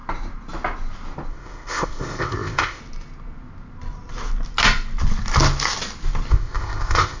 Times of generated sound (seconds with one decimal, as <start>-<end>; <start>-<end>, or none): 1.3-2.8; 6.3-7.2